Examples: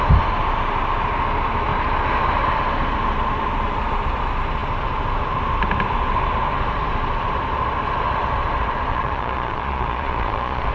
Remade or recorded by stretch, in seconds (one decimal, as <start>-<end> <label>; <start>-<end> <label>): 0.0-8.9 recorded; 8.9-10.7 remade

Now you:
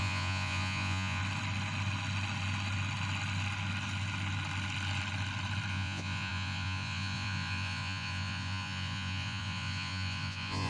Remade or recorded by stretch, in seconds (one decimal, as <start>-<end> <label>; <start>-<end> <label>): 0.0-1.2 remade; 1.2-5.7 recorded; 5.7-10.7 remade

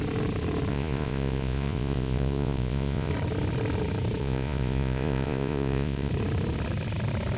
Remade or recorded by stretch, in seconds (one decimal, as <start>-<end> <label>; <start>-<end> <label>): 0.0-0.7 recorded; 0.7-3.1 remade; 3.1-4.2 recorded; 4.2-6.1 remade; 6.1-7.4 recorded

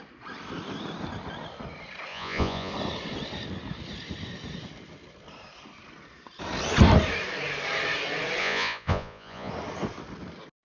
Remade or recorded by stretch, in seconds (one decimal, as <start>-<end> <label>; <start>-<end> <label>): 0.0-2.1 recorded; 2.1-2.7 remade; 2.7-8.4 recorded; 8.4-9.5 remade; 9.5-10.6 recorded

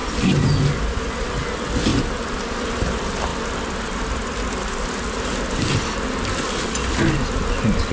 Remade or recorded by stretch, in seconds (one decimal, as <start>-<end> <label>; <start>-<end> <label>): 0.0-7.9 recorded

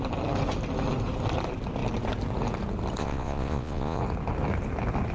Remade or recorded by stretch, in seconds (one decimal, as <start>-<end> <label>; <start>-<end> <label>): 0.0-3.0 recorded; 3.0-4.0 remade; 4.0-5.1 recorded